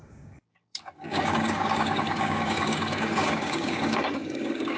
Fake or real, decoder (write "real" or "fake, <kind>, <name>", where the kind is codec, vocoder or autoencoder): fake, codec, DAC